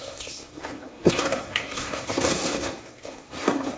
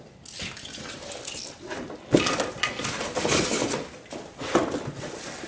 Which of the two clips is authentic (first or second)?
second